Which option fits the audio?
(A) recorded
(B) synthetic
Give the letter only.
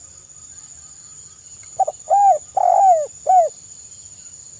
A